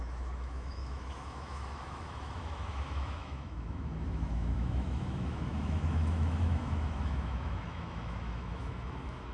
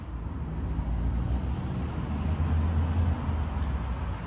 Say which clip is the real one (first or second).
second